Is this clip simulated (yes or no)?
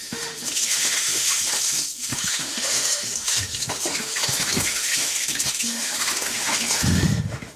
yes